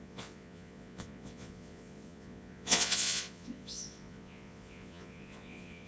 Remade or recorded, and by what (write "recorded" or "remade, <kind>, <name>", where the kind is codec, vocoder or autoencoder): remade, vocoder, Vocos